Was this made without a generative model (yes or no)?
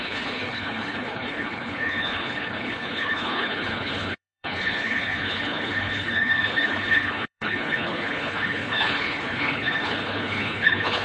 no